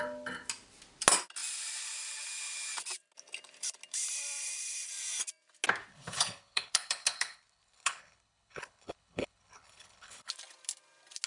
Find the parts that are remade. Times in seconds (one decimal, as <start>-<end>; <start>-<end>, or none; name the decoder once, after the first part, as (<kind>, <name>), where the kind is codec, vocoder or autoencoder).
5.9-10.3 (codec, HILCodec)